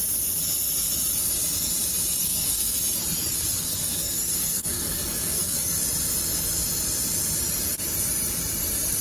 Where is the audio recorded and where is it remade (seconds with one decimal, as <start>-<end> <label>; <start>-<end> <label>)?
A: 0.0-2.2 recorded; 2.2-2.8 remade; 2.8-3.3 recorded; 3.3-5.7 remade; 5.7-9.0 recorded